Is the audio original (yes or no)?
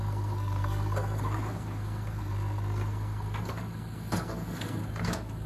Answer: no